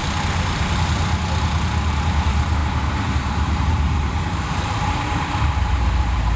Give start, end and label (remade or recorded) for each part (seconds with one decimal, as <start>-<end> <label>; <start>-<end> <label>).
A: 0.0-1.9 recorded; 1.9-6.4 remade